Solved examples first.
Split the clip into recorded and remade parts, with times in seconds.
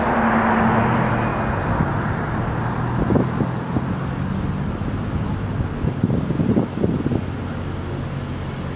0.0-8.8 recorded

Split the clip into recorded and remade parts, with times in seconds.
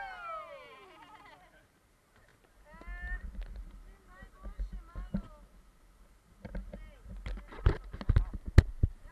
0.0-9.1 recorded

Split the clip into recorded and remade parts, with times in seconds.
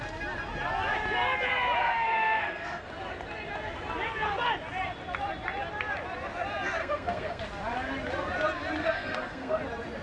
0.0-1.8 recorded; 1.8-2.9 remade; 2.9-6.8 recorded; 6.8-7.4 remade; 7.4-8.8 recorded; 8.8-9.6 remade; 9.6-10.0 recorded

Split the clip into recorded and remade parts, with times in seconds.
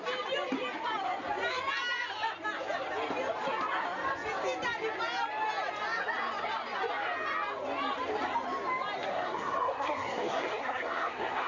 0.0-9.1 recorded; 9.1-11.5 remade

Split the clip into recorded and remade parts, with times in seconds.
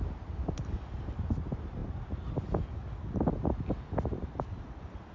0.0-5.1 recorded